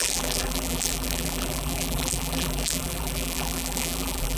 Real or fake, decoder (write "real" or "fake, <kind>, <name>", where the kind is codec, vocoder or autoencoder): fake, vocoder, BigVGAN v2